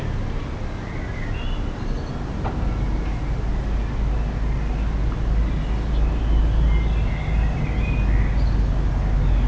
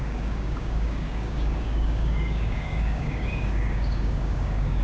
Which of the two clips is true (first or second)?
first